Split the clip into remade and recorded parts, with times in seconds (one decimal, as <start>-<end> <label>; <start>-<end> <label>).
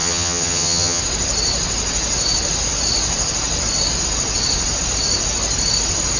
0.0-1.0 remade; 1.0-6.2 recorded